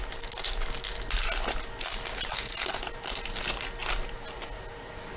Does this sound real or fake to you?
real